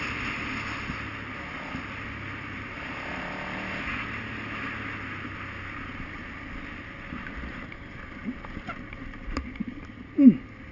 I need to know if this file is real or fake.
real